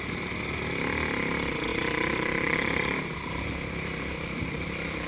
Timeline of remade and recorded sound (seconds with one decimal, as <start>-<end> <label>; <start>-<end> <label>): 0.0-1.7 recorded; 1.7-5.1 remade